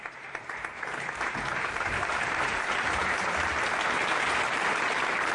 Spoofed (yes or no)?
yes